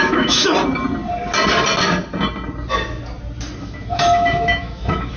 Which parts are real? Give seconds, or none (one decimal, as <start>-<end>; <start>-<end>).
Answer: 0.5-3.6